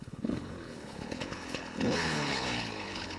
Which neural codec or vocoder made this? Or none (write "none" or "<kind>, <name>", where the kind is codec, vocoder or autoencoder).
codec, HILCodec